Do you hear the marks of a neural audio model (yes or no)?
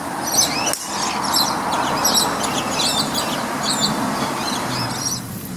no